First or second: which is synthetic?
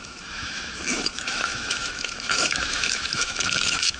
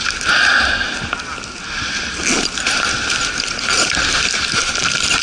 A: first